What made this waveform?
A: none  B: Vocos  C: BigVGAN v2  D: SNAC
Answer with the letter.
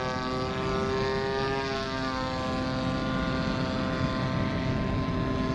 A